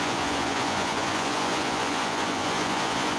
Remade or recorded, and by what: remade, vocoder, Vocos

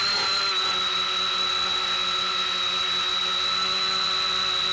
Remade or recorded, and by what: recorded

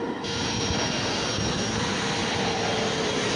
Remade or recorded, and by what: recorded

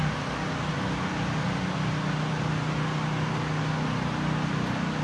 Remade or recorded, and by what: recorded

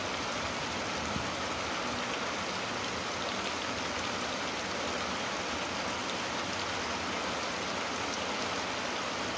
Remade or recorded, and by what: recorded